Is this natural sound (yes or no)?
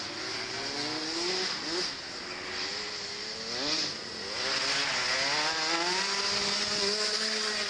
yes